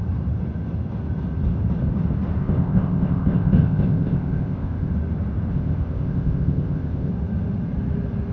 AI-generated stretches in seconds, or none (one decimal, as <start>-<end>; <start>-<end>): 2.4-4.9; 5.5-7.1